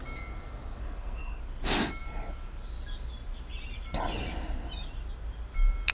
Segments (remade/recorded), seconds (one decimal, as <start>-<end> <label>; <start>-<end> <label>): 0.0-0.8 recorded; 0.8-1.4 remade; 1.4-5.9 recorded